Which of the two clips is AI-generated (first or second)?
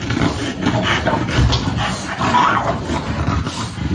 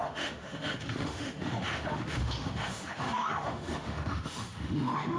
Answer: second